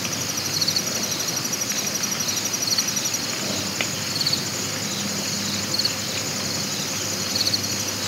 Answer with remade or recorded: recorded